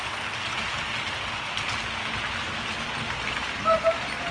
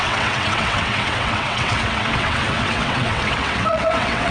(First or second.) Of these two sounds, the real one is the first